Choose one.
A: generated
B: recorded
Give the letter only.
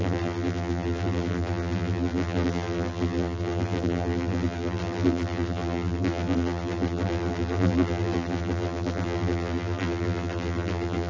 A